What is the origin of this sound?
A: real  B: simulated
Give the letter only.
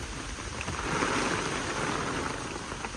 A